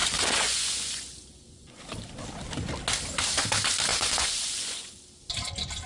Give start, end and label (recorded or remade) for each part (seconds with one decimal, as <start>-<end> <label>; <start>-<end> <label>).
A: 0.0-1.8 remade; 1.8-3.9 recorded; 3.9-4.9 remade; 4.9-5.9 recorded